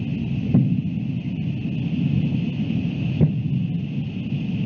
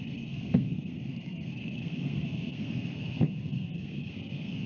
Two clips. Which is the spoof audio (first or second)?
second